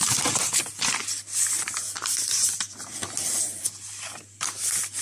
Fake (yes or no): yes